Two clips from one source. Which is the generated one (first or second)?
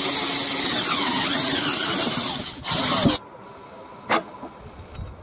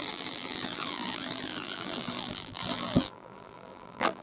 second